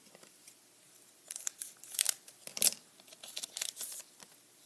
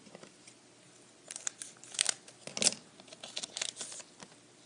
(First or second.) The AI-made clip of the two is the first